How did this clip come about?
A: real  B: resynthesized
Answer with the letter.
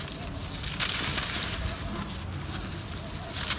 A